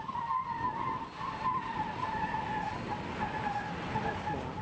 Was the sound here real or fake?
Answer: real